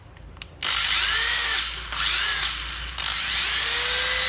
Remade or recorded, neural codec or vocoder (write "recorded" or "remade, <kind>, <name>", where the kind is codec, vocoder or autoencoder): recorded